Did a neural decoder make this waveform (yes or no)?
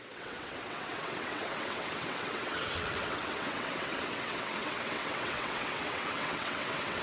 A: yes